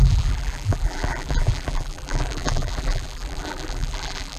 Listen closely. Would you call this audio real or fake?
fake